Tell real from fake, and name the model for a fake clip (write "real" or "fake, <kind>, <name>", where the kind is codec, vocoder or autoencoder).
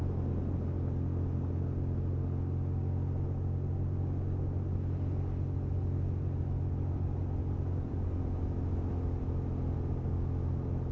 real